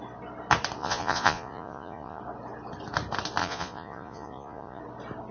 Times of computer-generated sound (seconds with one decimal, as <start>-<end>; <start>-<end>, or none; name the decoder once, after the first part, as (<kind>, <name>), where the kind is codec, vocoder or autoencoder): 0.8-2.2 (vocoder, Vocos); 3.4-4.8